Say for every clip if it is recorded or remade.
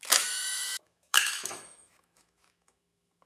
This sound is remade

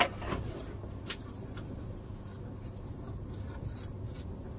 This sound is recorded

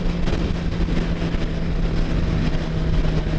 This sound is recorded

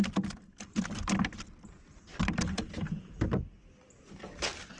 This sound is recorded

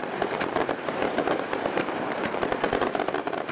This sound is remade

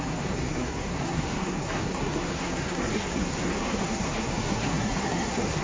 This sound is remade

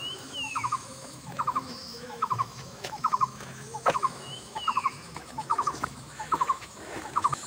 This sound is remade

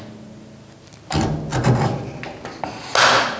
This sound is recorded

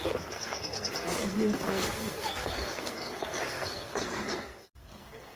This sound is remade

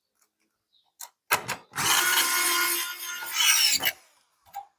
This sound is recorded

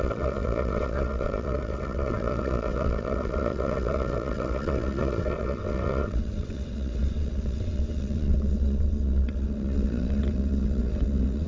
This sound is remade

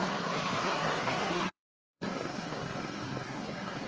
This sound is remade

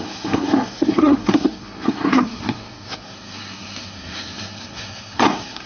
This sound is remade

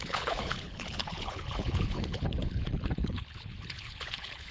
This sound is remade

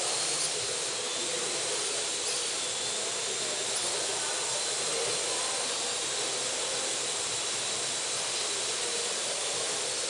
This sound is recorded